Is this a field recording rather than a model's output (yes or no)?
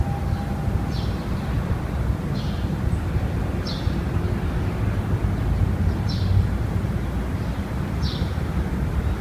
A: yes